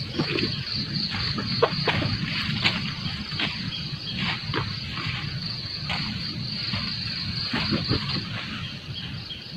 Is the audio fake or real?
real